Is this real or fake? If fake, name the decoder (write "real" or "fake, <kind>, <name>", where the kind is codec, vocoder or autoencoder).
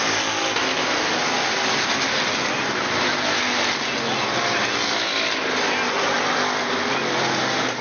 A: real